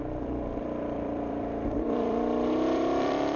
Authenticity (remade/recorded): remade